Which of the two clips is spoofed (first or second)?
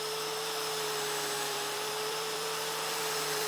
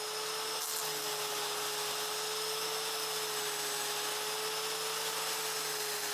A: first